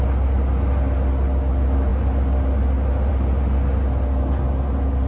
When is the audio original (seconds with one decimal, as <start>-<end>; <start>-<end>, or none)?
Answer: 0.0-5.1